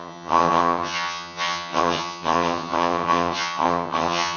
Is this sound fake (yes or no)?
yes